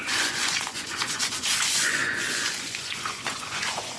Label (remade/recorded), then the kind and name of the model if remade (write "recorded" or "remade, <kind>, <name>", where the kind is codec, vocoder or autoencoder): remade, vocoder, Vocos